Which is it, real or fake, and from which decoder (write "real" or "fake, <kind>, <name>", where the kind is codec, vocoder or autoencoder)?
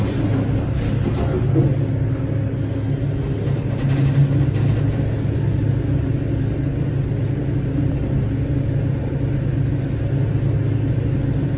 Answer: real